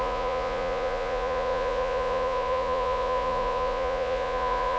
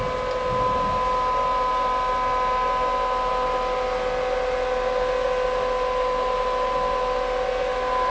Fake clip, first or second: first